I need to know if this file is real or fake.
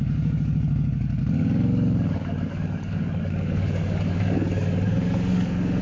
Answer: fake